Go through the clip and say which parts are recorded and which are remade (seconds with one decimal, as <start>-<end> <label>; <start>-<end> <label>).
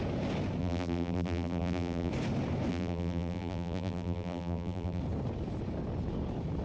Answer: 0.0-0.6 recorded; 0.6-2.1 remade; 2.1-2.7 recorded; 2.7-5.0 remade; 5.0-6.6 recorded